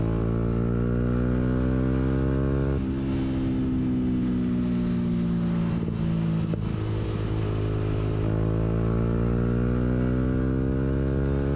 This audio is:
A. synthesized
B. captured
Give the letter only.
B